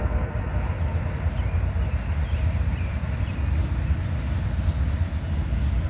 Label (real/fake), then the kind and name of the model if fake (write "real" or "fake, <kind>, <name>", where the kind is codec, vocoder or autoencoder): real